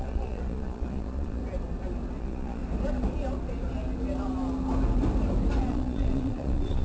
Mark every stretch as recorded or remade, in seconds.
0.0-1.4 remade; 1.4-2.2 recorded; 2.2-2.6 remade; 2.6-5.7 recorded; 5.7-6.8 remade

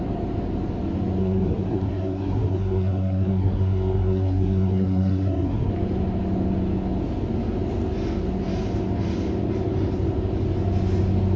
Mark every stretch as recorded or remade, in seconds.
0.0-1.2 recorded; 1.2-5.7 remade; 5.7-11.4 recorded

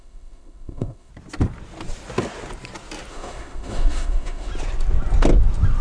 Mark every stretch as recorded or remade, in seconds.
0.0-1.1 remade; 1.1-3.1 recorded; 3.1-4.5 remade; 4.5-5.8 recorded

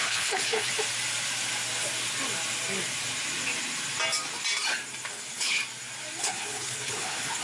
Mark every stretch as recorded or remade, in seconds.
0.0-0.7 remade; 0.7-5.1 recorded; 5.1-5.6 remade; 5.6-6.2 recorded; 6.2-7.4 remade

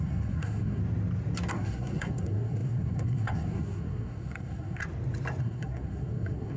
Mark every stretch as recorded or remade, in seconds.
0.0-0.8 remade; 0.8-1.5 recorded; 1.5-4.8 remade; 4.8-5.4 recorded; 5.4-6.6 remade